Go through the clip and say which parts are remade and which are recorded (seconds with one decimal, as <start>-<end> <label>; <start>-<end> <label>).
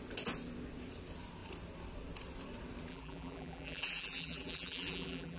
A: 0.0-2.9 recorded; 2.9-5.4 remade